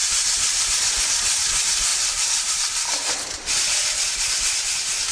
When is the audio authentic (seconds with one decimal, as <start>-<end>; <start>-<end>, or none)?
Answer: 0.0-1.9; 3.1-5.1